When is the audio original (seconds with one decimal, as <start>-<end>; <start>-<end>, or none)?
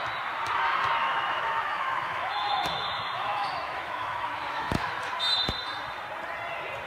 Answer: 0.0-1.0; 5.1-6.9